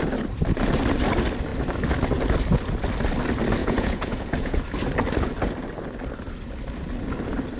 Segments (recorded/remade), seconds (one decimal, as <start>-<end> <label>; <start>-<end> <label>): 0.0-3.6 recorded; 3.6-4.6 remade; 4.6-7.6 recorded